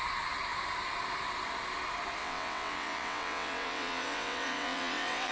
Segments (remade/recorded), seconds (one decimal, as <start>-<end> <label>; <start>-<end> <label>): 0.0-2.2 recorded; 2.2-5.3 remade